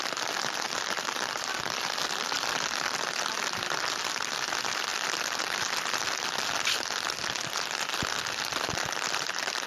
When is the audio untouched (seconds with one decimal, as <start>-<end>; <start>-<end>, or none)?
0.0-9.7